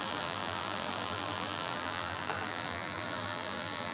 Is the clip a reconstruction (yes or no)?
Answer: yes